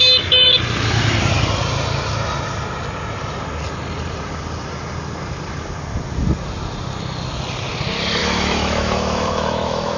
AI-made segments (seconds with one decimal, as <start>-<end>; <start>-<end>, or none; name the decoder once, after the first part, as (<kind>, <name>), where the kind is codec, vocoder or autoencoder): 8.2-10.0 (autoencoder, DAC-VAE)